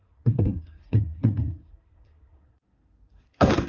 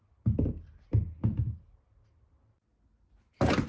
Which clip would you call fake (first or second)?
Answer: first